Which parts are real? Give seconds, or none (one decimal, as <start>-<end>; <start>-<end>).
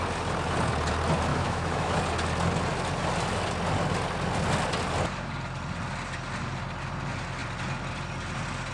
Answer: 0.0-1.3; 2.0-8.7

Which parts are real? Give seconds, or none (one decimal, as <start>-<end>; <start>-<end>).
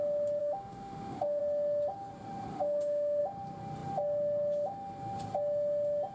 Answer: 0.0-0.4; 1.4-2.5; 3.2-6.1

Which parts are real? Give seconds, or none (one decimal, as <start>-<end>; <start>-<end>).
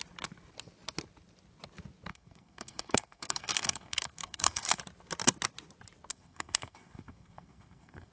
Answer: 0.0-2.1; 4.8-6.1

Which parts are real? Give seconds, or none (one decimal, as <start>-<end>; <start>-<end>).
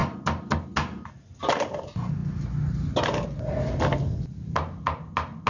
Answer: 0.0-5.5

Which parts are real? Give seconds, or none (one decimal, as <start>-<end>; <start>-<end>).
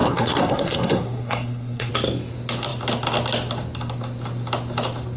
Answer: 1.9-5.2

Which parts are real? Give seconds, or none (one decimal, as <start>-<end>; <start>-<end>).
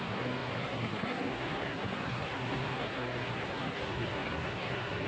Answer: none